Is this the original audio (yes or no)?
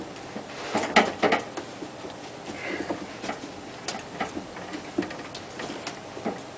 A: yes